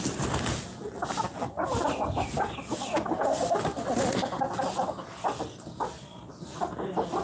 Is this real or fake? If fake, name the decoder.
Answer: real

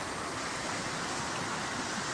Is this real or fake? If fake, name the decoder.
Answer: fake, vocoder, BigVGAN v2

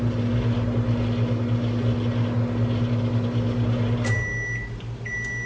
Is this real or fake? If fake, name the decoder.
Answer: real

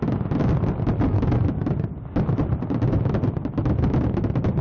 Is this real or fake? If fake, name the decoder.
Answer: real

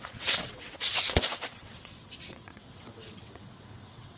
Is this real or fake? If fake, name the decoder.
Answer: fake, vocoder, WaveNeXt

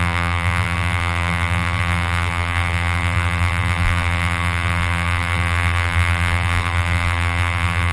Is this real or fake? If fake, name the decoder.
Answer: fake, vocoder, BigVGAN v2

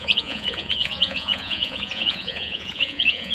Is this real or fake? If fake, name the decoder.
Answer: fake, vocoder, Vocos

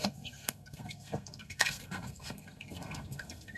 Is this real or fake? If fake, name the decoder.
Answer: fake, codec, SNAC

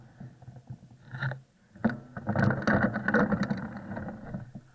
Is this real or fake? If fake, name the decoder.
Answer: real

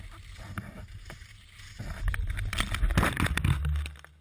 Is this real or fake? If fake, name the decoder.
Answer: real